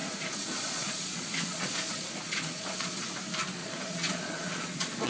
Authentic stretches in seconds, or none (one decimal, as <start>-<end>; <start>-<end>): 3.1-3.6